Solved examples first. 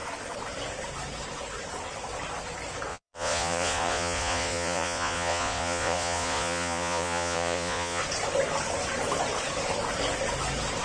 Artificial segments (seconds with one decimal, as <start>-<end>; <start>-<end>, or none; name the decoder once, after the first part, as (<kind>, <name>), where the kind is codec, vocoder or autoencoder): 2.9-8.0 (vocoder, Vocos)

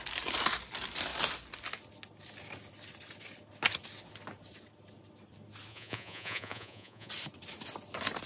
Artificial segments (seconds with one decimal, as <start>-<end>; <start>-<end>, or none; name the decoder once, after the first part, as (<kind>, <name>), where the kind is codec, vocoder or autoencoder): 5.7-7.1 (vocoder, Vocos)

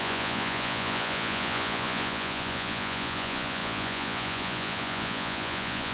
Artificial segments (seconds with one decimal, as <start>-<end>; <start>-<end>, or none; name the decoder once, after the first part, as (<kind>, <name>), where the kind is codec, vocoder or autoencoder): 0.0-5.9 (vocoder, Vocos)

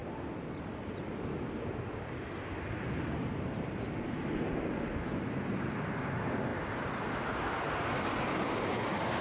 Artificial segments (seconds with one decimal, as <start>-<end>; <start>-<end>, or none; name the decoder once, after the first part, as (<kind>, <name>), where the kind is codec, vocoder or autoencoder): none

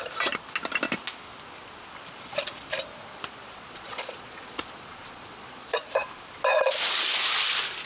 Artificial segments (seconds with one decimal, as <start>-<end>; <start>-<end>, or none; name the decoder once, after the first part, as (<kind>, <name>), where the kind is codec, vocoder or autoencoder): 3.0-5.9 (vocoder, Vocos)

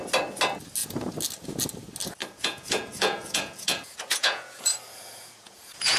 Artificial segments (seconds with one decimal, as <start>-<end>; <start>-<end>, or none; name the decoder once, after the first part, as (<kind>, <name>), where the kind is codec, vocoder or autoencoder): 2.2-6.0 (vocoder, Vocos)